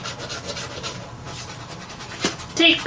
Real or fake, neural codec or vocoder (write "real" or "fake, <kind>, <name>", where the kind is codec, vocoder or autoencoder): real